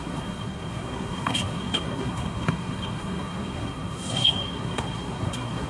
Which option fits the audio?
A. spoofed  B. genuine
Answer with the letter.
A